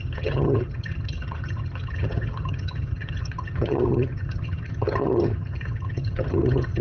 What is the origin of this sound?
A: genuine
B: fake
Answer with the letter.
B